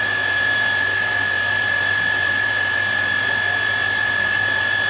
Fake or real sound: real